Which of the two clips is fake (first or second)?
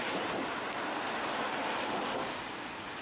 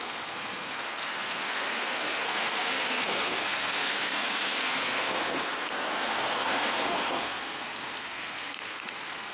second